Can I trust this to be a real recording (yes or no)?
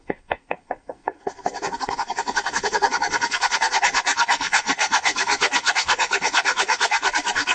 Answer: no